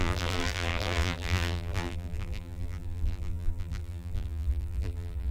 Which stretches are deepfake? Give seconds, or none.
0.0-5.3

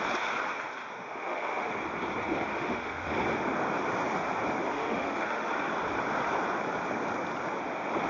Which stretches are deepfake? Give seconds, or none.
0.9-1.7; 2.5-3.1; 4.7-5.5

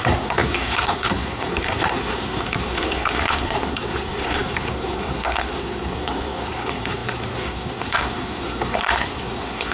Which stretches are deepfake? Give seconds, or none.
0.0-9.7

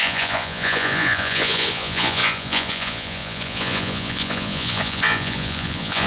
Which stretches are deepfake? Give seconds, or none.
0.0-6.1